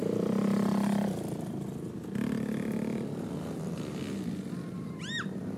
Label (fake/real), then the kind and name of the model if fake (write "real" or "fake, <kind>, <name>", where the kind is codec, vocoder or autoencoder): real